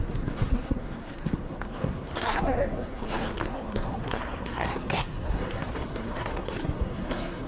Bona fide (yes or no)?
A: no